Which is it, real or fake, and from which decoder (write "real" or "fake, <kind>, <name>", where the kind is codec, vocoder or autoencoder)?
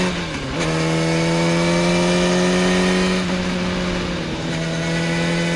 real